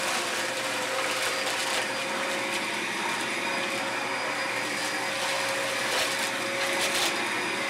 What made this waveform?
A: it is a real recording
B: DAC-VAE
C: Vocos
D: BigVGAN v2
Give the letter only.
A